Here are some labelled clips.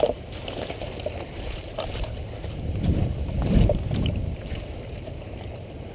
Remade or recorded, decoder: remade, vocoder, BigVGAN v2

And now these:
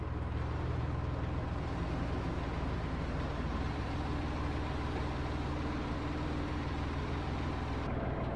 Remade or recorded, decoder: remade, vocoder, BigVGAN v2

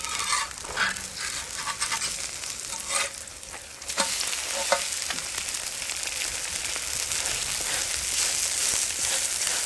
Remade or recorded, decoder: recorded